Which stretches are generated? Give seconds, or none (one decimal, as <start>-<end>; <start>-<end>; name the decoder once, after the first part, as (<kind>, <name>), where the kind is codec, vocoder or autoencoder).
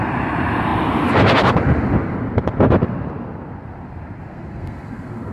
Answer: 4.3-5.3 (codec, SNAC)